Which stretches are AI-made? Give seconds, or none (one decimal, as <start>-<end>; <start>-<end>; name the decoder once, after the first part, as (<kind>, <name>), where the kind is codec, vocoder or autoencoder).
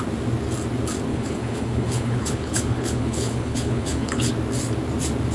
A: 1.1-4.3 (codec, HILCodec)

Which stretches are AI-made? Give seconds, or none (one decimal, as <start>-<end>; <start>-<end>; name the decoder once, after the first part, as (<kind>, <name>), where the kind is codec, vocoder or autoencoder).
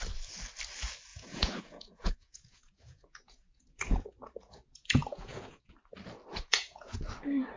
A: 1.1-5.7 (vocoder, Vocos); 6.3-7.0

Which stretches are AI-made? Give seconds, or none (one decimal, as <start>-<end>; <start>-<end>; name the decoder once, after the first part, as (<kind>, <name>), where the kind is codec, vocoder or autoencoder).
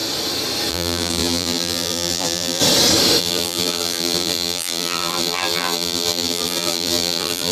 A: 0.7-2.6 (vocoder, BigVGAN v2); 3.2-7.5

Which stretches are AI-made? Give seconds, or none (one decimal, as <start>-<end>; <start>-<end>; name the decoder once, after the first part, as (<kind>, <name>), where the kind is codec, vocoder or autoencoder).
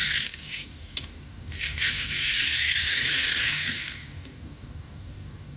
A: 0.0-5.6 (codec, DAC)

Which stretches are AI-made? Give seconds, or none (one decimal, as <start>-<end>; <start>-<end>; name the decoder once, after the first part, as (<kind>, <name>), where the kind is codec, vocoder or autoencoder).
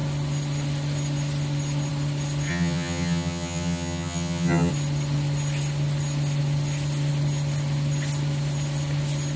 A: 2.5-4.7 (vocoder, HiFi-GAN)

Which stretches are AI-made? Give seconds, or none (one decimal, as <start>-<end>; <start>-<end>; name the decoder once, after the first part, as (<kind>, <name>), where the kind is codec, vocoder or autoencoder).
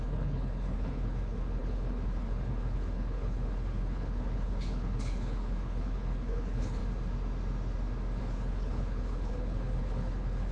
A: 0.0-6.8 (codec, HILCodec); 8.2-10.5